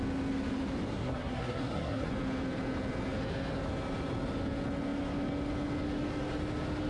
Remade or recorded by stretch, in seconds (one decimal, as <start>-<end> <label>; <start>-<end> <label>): 0.0-0.9 recorded; 0.9-2.1 remade; 2.1-6.9 recorded